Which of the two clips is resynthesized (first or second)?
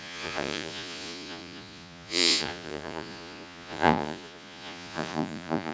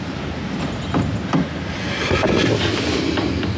first